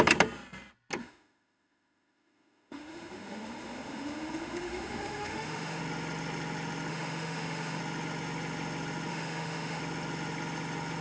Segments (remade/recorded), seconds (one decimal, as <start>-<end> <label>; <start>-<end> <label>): 0.0-1.0 recorded; 1.0-5.8 remade; 5.8-6.9 recorded; 6.9-7.8 remade; 7.8-9.1 recorded; 9.1-9.8 remade; 9.8-11.0 recorded